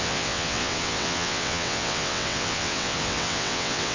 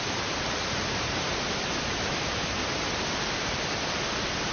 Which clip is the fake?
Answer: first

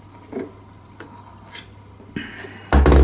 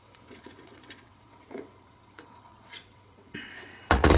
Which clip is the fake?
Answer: second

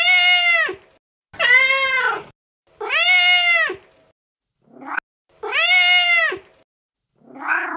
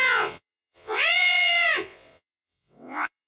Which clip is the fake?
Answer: second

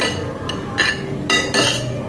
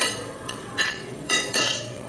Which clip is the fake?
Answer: second